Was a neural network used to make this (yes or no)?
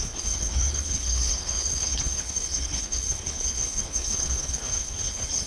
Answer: yes